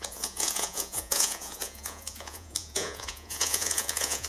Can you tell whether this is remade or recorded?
remade